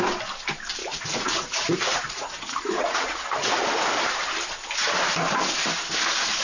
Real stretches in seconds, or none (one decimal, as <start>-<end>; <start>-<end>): 0.0-0.8; 3.5-6.4

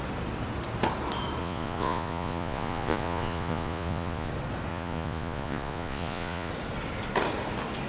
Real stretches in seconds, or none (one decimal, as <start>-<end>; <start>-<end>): 0.0-1.4; 4.3-4.7; 6.5-7.9